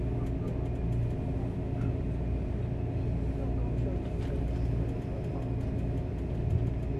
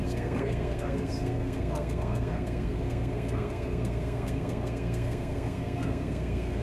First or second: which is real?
first